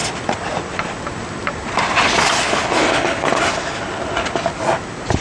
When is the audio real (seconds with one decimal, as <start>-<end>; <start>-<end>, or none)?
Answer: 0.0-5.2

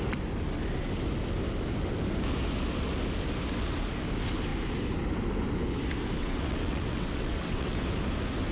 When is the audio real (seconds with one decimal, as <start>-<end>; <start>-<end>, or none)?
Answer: 0.0-6.2; 7.8-8.5

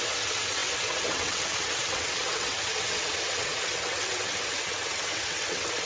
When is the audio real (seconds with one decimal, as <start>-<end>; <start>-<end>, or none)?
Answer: none